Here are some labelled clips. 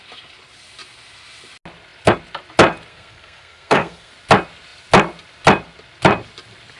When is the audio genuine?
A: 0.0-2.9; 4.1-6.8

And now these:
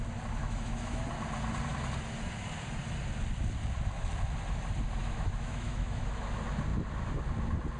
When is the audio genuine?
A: 0.0-0.4; 1.0-5.0; 6.2-7.8

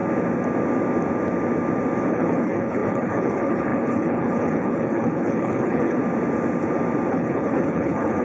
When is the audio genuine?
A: 0.0-2.1; 6.0-7.1

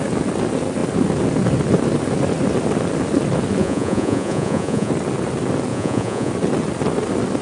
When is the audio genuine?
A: 0.0-3.6; 4.9-5.7; 6.3-7.4

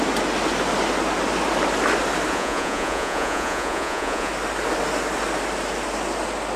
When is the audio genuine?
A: 0.0-2.3; 4.3-6.6

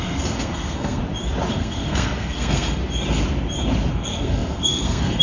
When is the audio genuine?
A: 1.0-1.5; 2.8-3.9

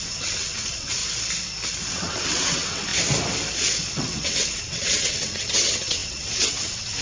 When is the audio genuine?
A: 1.0-1.9; 2.9-3.9

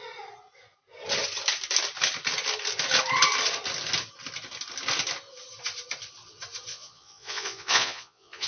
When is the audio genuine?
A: 0.0-6.7